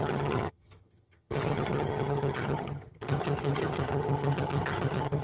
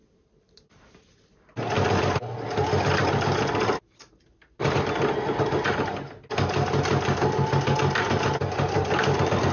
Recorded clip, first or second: second